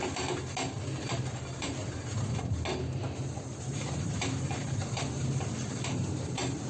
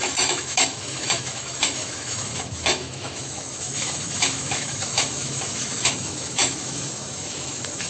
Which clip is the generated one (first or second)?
second